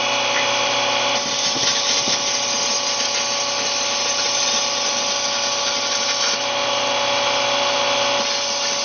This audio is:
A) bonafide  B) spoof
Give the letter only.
A